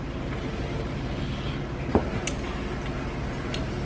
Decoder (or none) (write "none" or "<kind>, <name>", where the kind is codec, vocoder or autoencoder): none